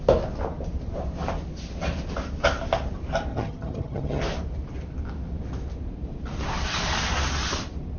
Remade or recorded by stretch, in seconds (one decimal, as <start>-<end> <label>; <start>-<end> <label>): 0.0-3.3 recorded; 3.3-4.2 remade; 4.2-8.0 recorded